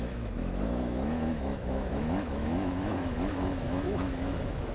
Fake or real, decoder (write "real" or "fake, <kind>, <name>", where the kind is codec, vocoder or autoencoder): fake, autoencoder, DAC-VAE